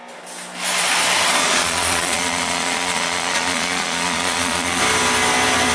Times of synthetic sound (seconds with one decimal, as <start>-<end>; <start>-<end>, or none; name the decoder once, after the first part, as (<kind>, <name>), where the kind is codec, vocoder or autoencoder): 1.4-4.8 (vocoder, Vocos)